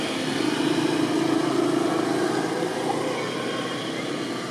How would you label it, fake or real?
real